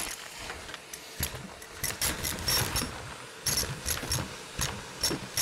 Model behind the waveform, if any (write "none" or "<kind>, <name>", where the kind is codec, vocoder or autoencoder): none